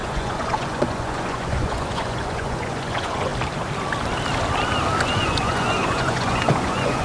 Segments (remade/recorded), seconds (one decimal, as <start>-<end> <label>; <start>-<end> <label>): 0.0-3.3 remade; 3.3-5.0 recorded; 5.0-7.0 remade